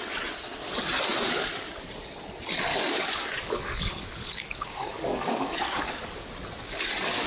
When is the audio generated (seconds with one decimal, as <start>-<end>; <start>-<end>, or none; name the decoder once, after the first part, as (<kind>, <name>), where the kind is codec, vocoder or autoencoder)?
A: 2.7-6.3 (codec, DAC)